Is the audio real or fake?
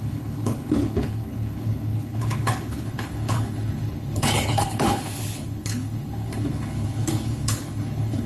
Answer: fake